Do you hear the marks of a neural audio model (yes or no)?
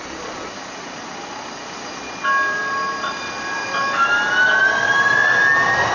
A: no